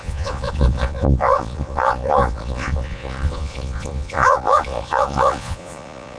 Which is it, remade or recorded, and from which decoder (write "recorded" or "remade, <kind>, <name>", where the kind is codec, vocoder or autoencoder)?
remade, vocoder, Vocos